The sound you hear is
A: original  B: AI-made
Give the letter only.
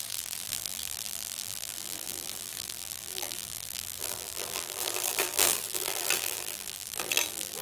B